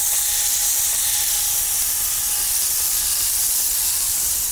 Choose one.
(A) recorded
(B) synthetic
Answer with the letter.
A